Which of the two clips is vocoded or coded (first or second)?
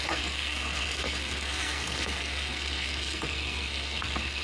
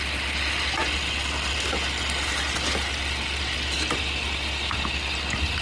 first